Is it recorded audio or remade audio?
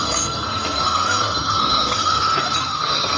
remade